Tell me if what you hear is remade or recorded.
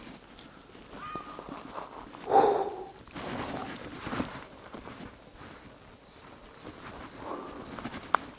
recorded